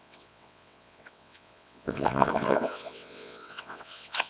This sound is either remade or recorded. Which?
remade